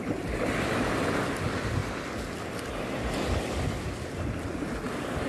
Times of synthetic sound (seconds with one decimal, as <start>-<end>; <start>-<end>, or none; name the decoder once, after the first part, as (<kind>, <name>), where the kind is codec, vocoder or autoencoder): none